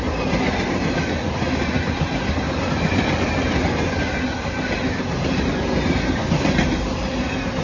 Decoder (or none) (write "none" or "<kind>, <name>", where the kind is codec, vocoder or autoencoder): none